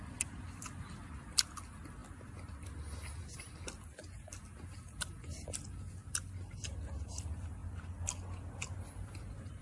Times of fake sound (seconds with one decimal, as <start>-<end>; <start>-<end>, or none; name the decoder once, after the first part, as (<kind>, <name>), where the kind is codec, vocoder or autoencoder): none